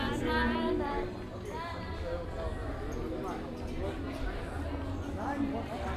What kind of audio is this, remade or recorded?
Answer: recorded